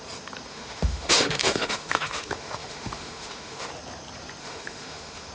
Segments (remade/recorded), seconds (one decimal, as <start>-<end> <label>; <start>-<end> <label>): 0.0-0.5 recorded; 0.5-3.7 remade; 3.7-4.4 recorded; 4.4-5.3 remade